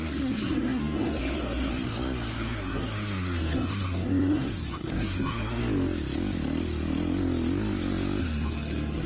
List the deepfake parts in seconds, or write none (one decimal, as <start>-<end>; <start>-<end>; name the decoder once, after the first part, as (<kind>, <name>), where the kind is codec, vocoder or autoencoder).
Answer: 0.0-1.7 (codec, SNAC); 2.3-5.6; 8.2-9.1